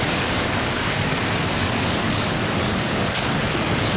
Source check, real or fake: fake